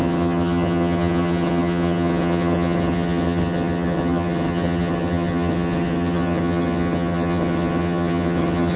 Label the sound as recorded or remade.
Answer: remade